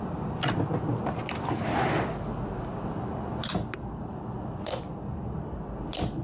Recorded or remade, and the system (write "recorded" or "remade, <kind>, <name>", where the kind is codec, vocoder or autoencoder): recorded